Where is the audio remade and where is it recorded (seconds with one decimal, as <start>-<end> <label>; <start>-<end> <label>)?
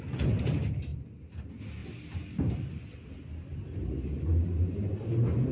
0.0-0.9 recorded; 0.9-1.4 remade; 1.4-3.5 recorded; 3.5-4.3 remade; 4.3-5.5 recorded